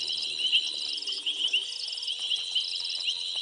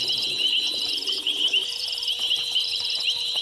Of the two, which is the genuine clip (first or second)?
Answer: first